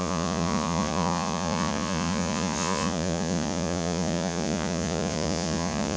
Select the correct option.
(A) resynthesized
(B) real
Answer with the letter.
A